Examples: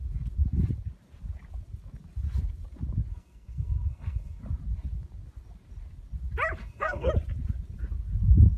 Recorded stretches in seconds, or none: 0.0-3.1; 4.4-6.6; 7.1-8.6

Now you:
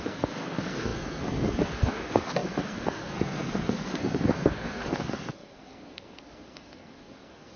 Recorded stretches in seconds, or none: none

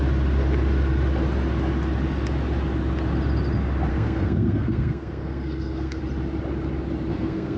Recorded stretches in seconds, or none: 0.0-3.9; 6.0-7.1

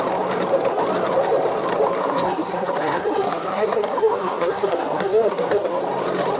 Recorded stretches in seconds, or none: 0.0-2.0; 5.8-6.4